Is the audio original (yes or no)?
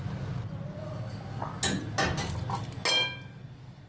yes